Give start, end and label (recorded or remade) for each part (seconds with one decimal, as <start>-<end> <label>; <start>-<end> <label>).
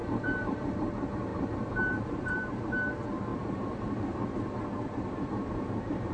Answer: 0.0-0.9 remade; 0.9-1.3 recorded; 1.3-2.6 remade; 2.6-3.3 recorded; 3.3-6.1 remade